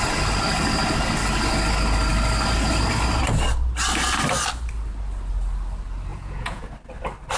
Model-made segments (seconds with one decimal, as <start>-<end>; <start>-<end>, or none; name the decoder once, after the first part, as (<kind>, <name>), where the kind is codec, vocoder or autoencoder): 6.1-6.7 (vocoder, Vocos)